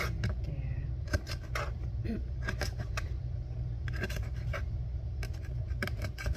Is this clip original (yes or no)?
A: no